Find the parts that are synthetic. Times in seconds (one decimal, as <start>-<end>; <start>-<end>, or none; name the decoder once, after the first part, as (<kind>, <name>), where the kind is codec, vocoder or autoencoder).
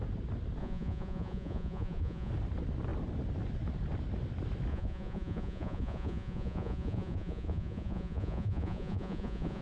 0.6-2.3 (vocoder, Vocos); 4.7-9.6